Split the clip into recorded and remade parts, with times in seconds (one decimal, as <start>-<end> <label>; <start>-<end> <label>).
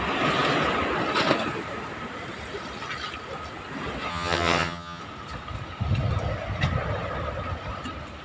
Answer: 0.0-4.1 recorded; 4.1-5.0 remade; 5.0-8.2 recorded